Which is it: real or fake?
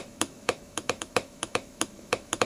fake